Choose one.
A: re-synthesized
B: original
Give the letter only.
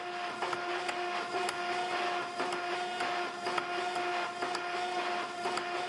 B